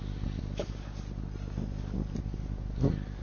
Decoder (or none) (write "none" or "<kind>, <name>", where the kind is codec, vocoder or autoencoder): none